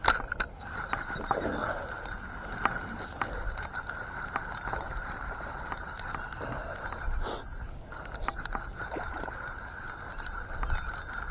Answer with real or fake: real